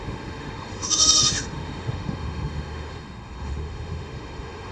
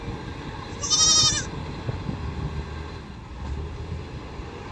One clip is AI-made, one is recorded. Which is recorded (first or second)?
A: second